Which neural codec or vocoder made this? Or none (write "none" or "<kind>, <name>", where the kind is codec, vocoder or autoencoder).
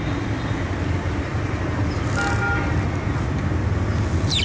none